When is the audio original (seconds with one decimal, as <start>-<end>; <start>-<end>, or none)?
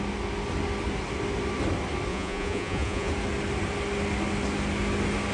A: 0.0-2.1; 3.1-5.3